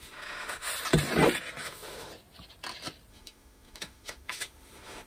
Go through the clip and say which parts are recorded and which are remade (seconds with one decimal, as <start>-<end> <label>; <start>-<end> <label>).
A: 0.0-0.7 remade; 0.7-1.6 recorded; 1.6-2.1 remade; 2.1-3.1 recorded; 3.1-5.1 remade